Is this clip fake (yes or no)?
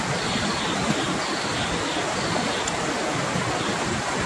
no